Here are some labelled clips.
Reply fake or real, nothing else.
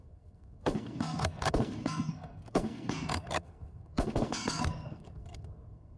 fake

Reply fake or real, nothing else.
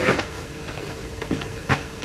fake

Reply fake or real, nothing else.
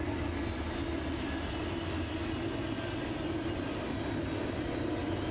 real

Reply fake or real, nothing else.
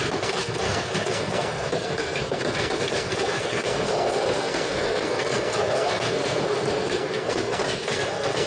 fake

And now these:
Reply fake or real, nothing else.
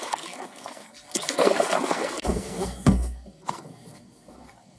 fake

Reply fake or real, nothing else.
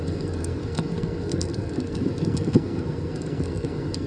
fake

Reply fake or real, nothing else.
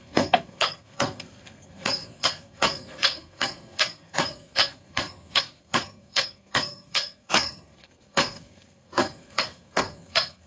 fake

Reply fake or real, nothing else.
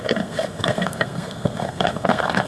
fake